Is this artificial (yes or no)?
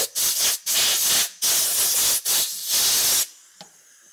no